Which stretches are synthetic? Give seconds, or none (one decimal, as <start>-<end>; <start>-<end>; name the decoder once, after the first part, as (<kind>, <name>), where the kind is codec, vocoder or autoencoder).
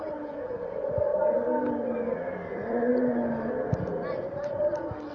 0.0-1.1 (vocoder, BigVGAN v2); 2.5-2.9; 4.2-5.1